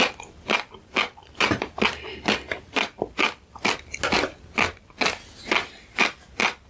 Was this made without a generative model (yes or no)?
yes